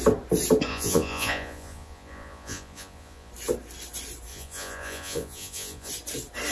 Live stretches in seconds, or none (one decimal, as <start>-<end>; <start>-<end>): 0.0-0.7; 3.3-4.3; 5.9-6.5